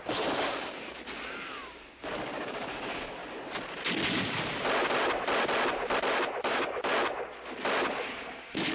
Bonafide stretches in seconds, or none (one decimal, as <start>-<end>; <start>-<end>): 3.2-6.5; 6.9-8.0